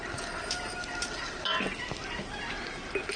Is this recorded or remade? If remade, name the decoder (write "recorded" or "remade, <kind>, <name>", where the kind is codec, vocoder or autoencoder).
recorded